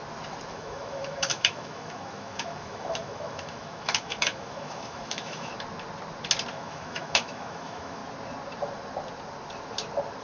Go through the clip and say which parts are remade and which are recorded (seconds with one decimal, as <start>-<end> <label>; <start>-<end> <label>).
0.0-0.5 recorded; 0.5-5.5 remade; 5.5-6.5 recorded; 6.5-8.0 remade; 8.0-10.2 recorded